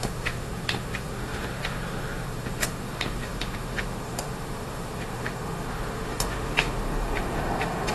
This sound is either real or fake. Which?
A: fake